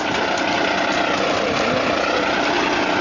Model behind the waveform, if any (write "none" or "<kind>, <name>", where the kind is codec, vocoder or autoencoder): none